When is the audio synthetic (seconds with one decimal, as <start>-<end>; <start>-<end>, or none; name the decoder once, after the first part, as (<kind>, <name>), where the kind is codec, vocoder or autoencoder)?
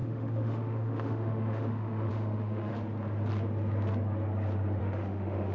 0.0-2.7 (autoencoder, DAC-VAE); 4.8-5.5